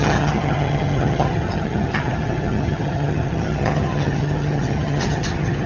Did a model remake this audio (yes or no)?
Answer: yes